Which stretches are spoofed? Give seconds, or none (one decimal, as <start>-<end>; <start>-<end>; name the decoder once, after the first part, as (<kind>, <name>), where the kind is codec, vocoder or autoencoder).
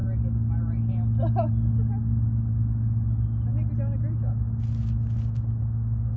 none